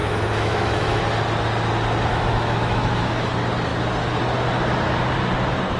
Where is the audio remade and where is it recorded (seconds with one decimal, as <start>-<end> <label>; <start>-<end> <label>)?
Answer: 0.0-1.0 remade; 1.0-2.1 recorded; 2.1-3.3 remade; 3.3-5.8 recorded